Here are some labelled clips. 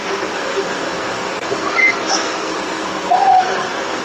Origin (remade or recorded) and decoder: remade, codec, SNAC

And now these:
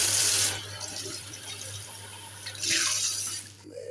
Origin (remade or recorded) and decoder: remade, vocoder, BigVGAN v2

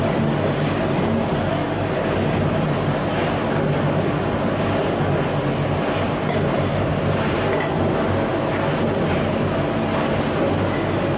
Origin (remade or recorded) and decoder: recorded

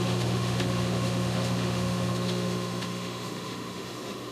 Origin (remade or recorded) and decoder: remade, autoencoder, DAC-VAE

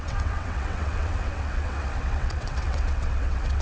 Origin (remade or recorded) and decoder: remade, vocoder, WaveNeXt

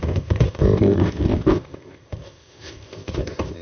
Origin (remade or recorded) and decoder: remade, codec, ZipCodec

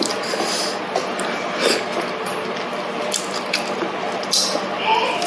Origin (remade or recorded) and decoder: recorded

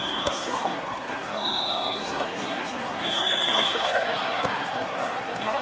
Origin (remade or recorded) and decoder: remade, codec, SNAC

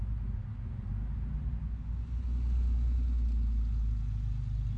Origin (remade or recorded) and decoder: recorded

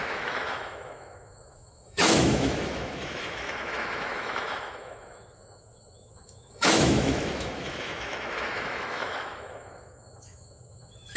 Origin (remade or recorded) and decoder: remade, autoencoder, DAC-VAE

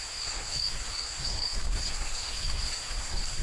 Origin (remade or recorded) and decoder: remade, codec, SNAC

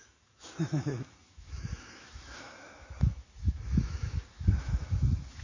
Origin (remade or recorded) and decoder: remade, autoencoder, DAC-VAE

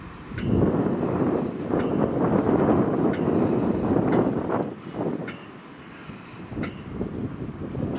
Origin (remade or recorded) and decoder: recorded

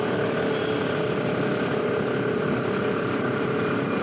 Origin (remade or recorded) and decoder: recorded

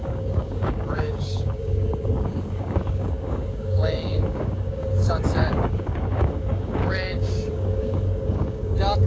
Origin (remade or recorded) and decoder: remade, codec, DAC